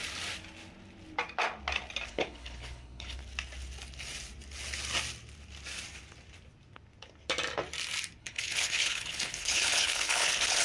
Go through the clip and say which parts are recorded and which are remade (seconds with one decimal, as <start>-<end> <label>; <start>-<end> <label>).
0.0-2.1 recorded; 2.1-3.2 remade; 3.2-8.2 recorded; 8.2-10.6 remade